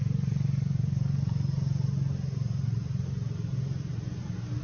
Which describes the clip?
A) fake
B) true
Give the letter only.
B